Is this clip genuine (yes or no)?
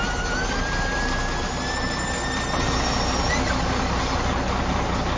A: yes